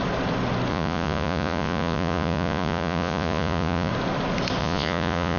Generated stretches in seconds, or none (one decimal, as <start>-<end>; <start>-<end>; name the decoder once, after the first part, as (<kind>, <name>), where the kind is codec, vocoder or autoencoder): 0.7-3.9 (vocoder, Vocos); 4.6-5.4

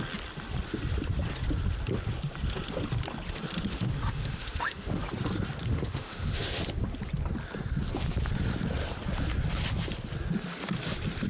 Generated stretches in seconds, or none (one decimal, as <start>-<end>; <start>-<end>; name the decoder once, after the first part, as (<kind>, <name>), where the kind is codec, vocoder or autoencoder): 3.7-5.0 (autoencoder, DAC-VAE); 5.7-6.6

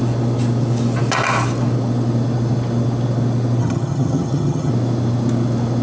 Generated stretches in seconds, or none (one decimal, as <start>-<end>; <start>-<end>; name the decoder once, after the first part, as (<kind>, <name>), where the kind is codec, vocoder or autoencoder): 3.6-4.7 (vocoder, HiFi-GAN)

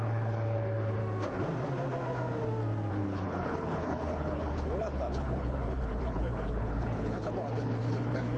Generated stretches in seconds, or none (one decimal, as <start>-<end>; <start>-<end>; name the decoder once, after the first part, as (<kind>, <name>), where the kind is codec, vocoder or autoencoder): 0.0-1.0 (codec, HILCodec); 2.9-8.4

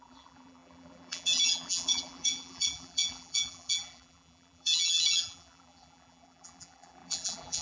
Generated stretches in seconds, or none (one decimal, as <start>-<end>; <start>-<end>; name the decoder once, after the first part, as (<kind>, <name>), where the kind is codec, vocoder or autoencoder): 0.0-7.6 (vocoder, BigVGAN v2)

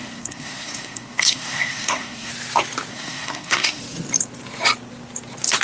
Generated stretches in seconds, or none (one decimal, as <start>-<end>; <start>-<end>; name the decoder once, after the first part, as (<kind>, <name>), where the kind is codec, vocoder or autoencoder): 0.0-2.3 (codec, SNAC); 2.9-3.8

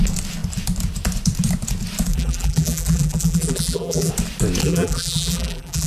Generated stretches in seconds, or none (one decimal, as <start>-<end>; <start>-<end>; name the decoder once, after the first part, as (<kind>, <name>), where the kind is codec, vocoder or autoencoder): 2.1-4.1 (vocoder, BigVGAN v2); 4.6-5.9

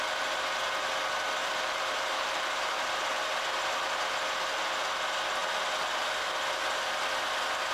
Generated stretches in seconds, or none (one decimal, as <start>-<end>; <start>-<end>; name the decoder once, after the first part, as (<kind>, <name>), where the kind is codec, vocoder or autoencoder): 1.4-2.9 (vocoder, BigVGAN v2)